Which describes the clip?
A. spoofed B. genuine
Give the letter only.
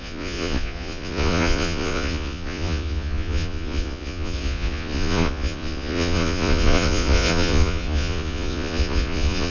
A